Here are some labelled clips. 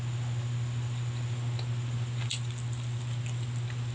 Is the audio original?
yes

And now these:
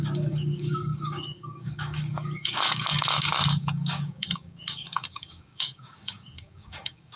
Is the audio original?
no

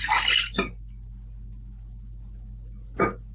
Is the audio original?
yes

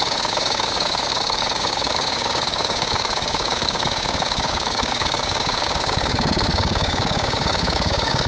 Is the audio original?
no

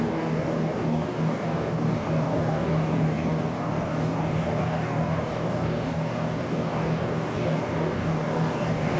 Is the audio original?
no